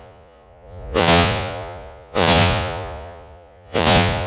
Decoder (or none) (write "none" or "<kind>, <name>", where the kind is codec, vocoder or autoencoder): vocoder, Vocos